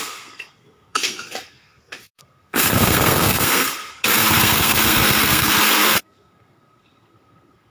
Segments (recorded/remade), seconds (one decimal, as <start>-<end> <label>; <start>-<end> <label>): 0.0-7.7 remade